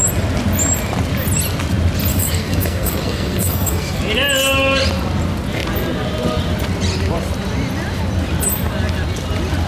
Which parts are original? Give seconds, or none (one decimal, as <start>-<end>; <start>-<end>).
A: 0.0-2.1; 4.0-9.7